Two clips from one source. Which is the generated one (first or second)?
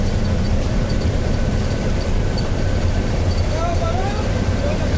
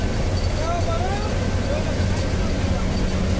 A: first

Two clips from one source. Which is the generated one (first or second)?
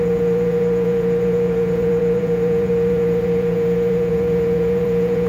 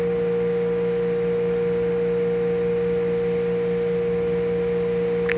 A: first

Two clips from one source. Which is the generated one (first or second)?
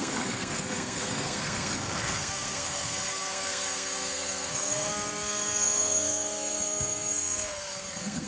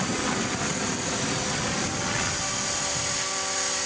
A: first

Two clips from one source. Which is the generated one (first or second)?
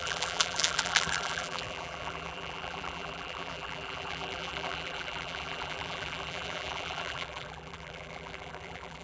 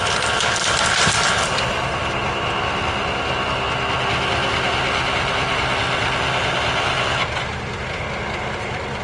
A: first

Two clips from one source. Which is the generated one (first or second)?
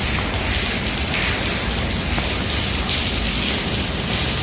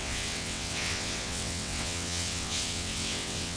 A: second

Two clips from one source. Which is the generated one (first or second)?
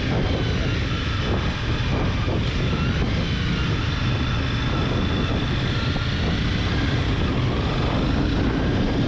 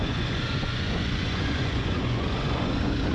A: second